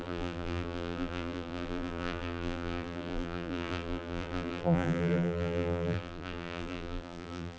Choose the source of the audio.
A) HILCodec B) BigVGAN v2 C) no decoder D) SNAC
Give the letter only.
B